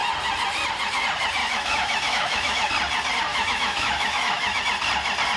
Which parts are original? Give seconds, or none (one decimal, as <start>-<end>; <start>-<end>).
0.0-1.4; 2.7-3.3; 4.6-5.4